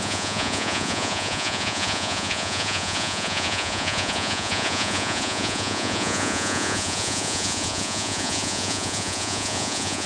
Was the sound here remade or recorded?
remade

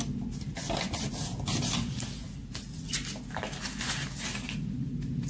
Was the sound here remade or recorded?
recorded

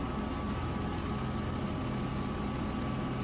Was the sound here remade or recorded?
recorded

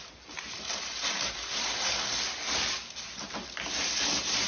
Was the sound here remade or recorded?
recorded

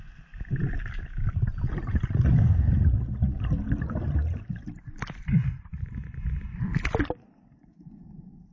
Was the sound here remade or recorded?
recorded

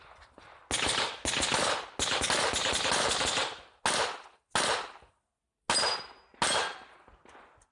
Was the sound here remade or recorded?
recorded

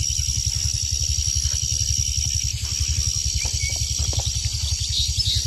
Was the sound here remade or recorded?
recorded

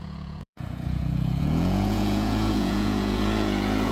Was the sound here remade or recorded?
remade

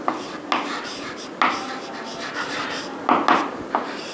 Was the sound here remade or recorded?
recorded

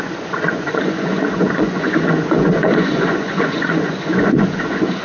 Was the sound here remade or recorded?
remade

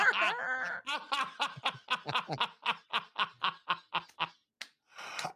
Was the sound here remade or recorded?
recorded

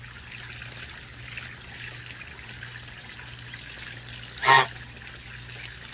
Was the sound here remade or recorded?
recorded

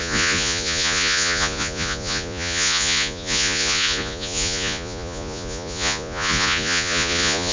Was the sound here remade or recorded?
remade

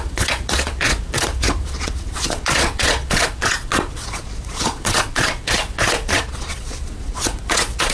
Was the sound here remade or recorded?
remade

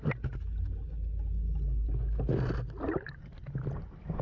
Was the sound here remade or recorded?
recorded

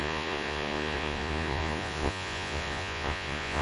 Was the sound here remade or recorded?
remade